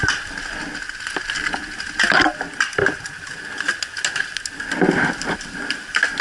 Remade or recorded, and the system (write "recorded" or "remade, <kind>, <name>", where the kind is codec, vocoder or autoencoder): recorded